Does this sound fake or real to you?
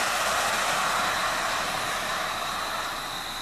real